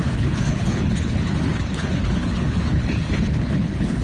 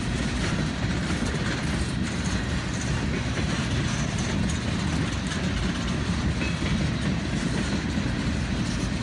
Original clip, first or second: second